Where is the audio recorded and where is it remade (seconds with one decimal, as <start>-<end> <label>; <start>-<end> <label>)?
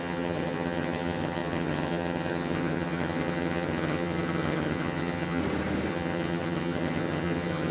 0.0-5.4 remade; 5.4-5.9 recorded; 5.9-7.7 remade